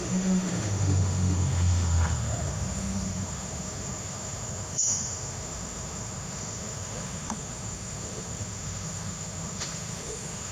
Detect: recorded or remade remade